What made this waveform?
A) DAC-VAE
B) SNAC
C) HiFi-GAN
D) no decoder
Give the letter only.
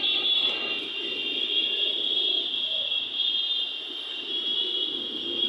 D